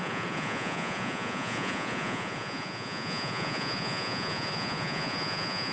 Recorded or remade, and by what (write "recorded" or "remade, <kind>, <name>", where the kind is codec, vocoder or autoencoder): remade, vocoder, Vocos